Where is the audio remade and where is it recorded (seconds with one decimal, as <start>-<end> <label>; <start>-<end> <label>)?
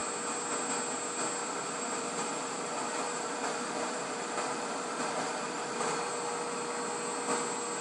0.0-1.4 recorded; 1.4-6.1 remade; 6.1-7.8 recorded